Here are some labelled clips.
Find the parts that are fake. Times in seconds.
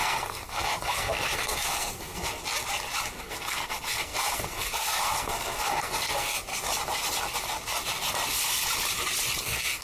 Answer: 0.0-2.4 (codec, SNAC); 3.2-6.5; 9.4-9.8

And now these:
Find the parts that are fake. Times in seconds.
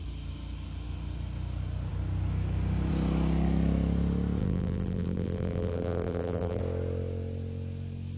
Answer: 4.4-6.6 (vocoder, BigVGAN v2)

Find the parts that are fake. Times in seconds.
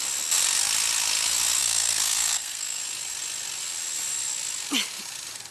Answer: 1.6-2.8 (codec, SNAC)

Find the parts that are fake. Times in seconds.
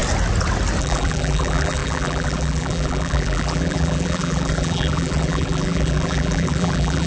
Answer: 0.8-7.1 (vocoder, BigVGAN v2)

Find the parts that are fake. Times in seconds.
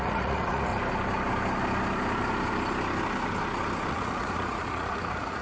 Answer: 0.0-0.7 (vocoder, Vocos); 3.9-5.4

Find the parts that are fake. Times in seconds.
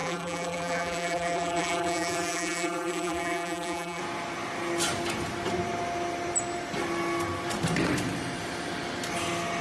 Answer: 0.0-4.0 (vocoder, BigVGAN v2)